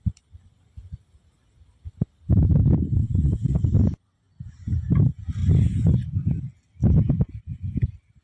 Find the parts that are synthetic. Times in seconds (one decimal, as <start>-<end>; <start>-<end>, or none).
3.0-3.6